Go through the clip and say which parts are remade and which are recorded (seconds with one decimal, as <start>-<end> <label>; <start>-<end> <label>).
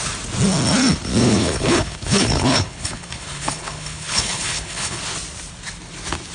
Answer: 0.0-1.2 recorded; 1.2-5.0 remade; 5.0-6.3 recorded